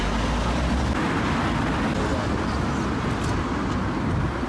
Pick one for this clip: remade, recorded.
recorded